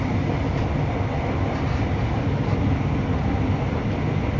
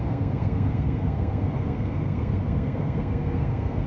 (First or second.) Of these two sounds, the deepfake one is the second